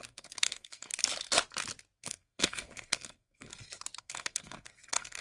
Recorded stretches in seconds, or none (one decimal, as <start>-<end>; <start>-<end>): 0.9-2.0; 3.5-4.0